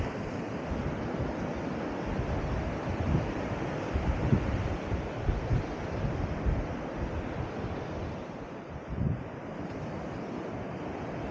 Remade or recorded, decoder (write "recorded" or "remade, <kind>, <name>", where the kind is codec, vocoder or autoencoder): recorded